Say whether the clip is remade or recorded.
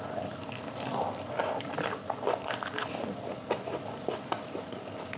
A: recorded